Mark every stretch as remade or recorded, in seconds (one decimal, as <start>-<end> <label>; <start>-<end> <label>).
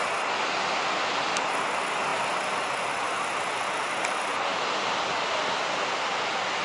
0.0-6.6 recorded